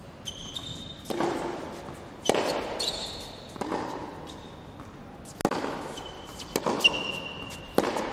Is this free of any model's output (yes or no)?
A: yes